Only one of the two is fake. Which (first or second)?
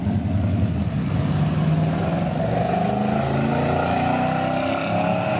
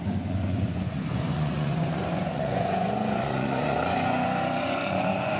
second